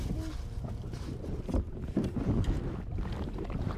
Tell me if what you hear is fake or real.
fake